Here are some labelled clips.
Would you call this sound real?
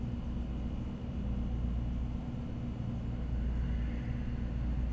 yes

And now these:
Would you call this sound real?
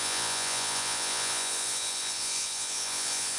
no